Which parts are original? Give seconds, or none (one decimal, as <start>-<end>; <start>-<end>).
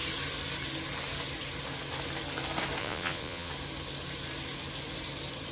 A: 0.0-2.8; 3.5-5.5